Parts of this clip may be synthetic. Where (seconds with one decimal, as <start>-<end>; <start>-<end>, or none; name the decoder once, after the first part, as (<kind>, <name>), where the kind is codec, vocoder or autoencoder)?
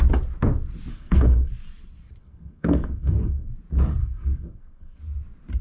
0.9-1.5 (codec, SNAC); 2.2-3.5; 4.0-5.0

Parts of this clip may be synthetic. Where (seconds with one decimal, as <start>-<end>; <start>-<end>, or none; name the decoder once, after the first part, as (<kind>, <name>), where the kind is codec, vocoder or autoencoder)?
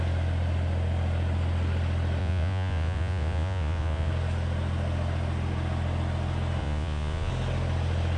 2.2-4.1 (vocoder, Vocos); 6.6-7.3